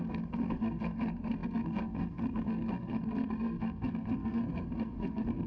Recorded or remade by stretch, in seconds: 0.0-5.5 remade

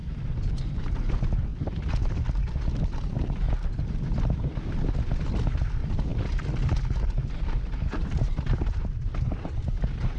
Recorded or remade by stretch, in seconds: 0.0-10.2 recorded